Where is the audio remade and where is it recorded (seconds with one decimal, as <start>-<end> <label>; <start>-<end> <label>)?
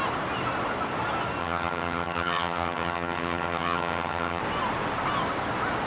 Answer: 0.0-1.4 recorded; 1.4-4.4 remade; 4.4-5.9 recorded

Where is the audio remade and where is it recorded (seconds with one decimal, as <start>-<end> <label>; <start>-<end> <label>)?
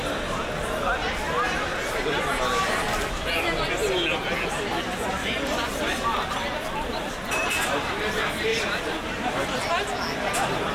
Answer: 0.0-8.5 recorded; 8.5-9.3 remade; 9.3-10.7 recorded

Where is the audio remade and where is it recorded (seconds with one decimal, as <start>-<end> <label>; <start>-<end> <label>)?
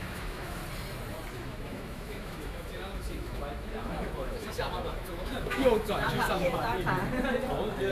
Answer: 0.0-0.6 remade; 0.6-1.3 recorded; 1.3-6.7 remade; 6.7-7.9 recorded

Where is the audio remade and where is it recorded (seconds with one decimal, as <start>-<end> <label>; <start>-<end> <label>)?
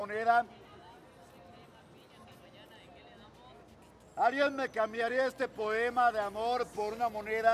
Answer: 0.0-7.5 recorded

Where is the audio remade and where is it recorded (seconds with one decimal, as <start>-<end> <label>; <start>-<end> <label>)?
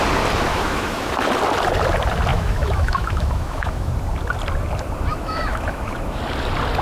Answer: 0.0-0.5 recorded; 0.5-1.1 remade; 1.1-2.3 recorded; 2.3-3.9 remade; 3.9-5.1 recorded; 5.1-6.2 remade; 6.2-6.8 recorded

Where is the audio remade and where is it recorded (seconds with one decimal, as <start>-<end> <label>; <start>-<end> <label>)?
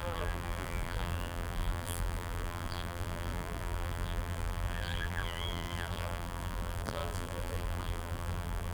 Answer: 0.0-8.7 remade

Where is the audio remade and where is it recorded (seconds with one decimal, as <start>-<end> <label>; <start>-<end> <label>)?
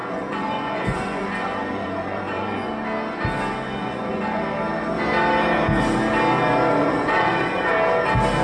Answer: 0.0-2.7 remade; 2.7-3.8 recorded; 3.8-4.4 remade; 4.4-6.8 recorded; 6.8-7.7 remade; 7.7-8.4 recorded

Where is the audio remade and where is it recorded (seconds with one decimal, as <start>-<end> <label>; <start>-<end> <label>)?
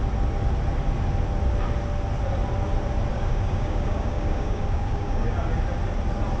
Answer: 0.0-3.1 recorded; 3.1-5.4 remade; 5.4-6.4 recorded